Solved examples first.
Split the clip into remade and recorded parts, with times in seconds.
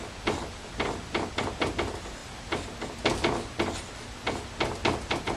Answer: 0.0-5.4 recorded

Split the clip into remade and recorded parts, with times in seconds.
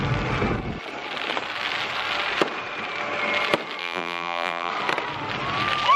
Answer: 0.0-3.8 recorded; 3.8-4.7 remade; 4.7-6.0 recorded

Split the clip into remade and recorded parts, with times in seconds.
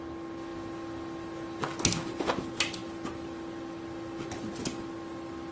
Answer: 0.0-5.5 recorded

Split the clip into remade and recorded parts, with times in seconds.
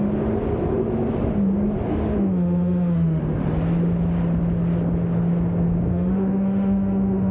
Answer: 0.0-1.9 recorded; 1.9-3.2 remade; 3.2-5.9 recorded; 5.9-7.3 remade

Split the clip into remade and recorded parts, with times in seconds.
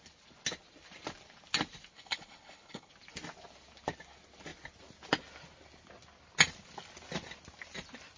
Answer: 0.0-1.9 recorded; 1.9-2.9 remade; 2.9-8.2 recorded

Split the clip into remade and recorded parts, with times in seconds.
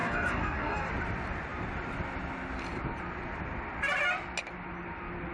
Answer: 0.0-0.9 remade; 0.9-5.3 recorded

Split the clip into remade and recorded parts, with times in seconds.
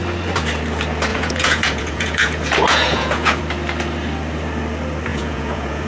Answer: 0.0-1.1 recorded; 1.1-3.4 remade; 3.4-5.1 recorded; 5.1-5.9 remade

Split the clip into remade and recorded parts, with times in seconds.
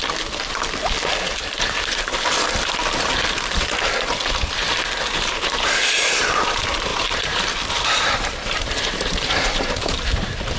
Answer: 0.0-5.1 recorded; 5.1-10.6 remade